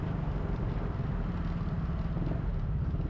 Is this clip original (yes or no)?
yes